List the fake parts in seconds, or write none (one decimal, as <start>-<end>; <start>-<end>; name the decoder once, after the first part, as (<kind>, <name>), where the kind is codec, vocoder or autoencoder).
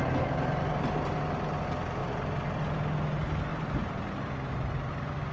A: 2.0-2.6 (vocoder, BigVGAN v2); 3.5-4.5